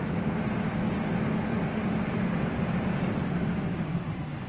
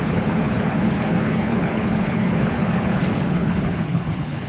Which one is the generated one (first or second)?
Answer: second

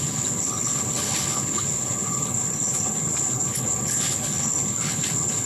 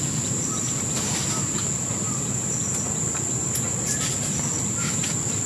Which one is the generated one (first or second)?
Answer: first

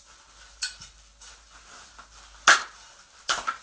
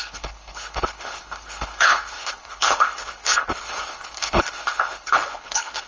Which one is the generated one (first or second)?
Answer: second